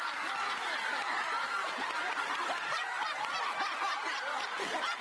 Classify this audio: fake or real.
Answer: real